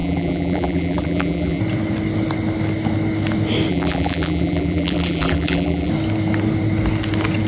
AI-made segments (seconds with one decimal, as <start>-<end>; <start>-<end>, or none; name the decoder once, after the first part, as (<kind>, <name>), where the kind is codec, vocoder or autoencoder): 0.0-1.6 (vocoder, BigVGAN v2); 3.7-5.9